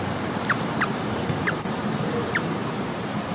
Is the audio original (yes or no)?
no